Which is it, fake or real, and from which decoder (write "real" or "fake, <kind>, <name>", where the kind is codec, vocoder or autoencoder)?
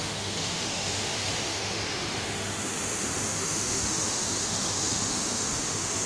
fake, autoencoder, DAC-VAE